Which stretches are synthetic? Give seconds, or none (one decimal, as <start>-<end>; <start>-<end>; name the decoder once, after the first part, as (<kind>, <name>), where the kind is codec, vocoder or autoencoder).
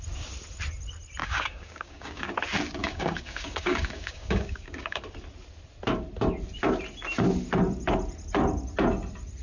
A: 1.2-2.3 (codec, DAC); 2.8-5.0